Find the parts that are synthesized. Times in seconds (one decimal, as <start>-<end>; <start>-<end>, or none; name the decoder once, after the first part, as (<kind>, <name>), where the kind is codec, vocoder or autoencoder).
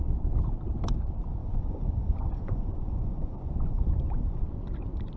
1.4-4.4 (vocoder, Vocos)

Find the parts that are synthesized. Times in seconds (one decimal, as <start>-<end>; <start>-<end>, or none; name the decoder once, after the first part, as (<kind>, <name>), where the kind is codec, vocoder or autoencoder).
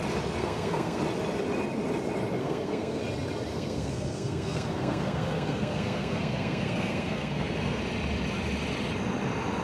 0.4-1.0 (codec, SNAC); 2.4-3.0; 3.5-7.8